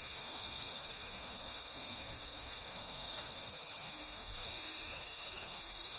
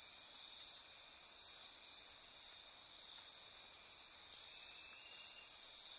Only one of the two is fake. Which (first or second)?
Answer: first